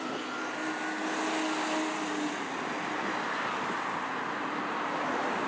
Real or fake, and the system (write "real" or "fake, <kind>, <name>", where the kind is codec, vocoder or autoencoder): real